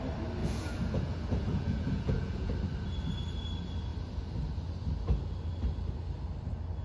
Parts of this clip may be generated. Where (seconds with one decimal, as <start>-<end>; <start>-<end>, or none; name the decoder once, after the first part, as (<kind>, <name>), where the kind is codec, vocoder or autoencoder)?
0.4-2.5 (vocoder, Vocos)